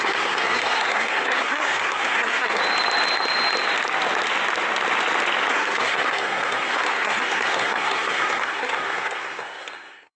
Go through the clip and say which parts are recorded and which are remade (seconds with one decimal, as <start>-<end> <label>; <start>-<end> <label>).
0.0-2.6 remade; 2.6-5.5 recorded; 5.5-10.2 remade